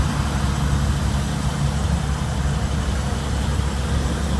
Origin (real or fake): real